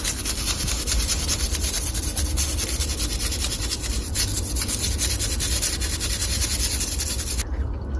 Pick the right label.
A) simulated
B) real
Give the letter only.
B